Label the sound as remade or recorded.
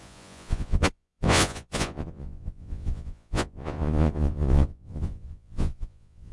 remade